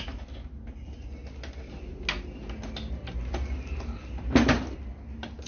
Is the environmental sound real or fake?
real